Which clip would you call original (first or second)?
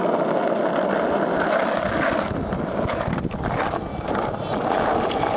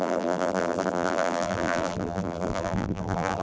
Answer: first